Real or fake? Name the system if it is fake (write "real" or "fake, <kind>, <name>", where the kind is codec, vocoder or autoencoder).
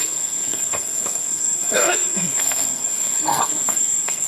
fake, codec, SNAC